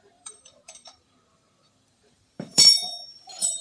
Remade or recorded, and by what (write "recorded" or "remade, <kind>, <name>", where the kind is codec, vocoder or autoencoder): remade, vocoder, BigVGAN v2